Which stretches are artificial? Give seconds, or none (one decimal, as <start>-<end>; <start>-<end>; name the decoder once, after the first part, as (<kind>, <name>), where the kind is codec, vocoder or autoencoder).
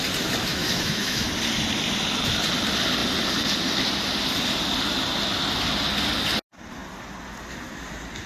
0.5-1.3 (autoencoder, DAC-VAE)